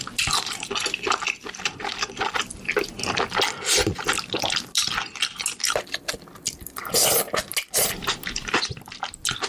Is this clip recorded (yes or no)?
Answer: yes